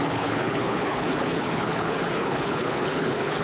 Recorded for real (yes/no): no